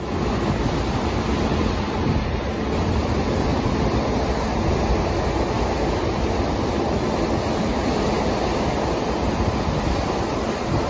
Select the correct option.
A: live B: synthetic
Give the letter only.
A